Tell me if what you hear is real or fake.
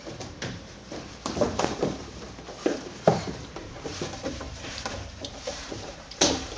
fake